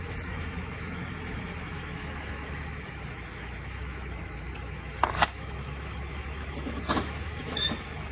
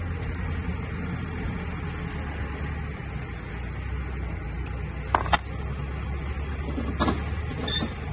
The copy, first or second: first